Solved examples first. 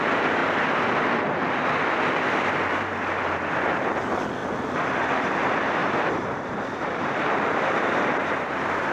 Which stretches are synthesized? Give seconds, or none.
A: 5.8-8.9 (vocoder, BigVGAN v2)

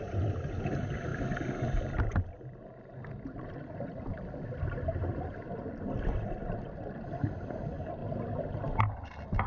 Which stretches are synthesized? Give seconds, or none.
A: none

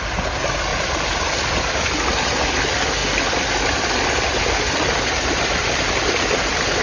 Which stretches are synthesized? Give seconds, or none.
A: 0.7-1.3 (vocoder, BigVGAN v2)